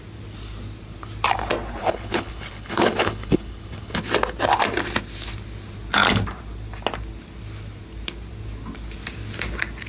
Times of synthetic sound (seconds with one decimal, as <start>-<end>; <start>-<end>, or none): 1.8-4.0